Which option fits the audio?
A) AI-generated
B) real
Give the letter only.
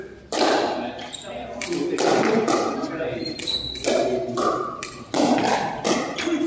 B